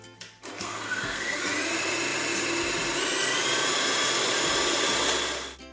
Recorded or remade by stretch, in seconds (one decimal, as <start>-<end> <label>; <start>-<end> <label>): 0.0-0.6 recorded; 0.6-1.4 remade; 1.4-5.7 recorded